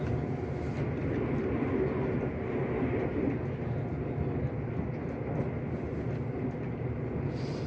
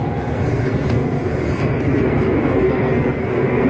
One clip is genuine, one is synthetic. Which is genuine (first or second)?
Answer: first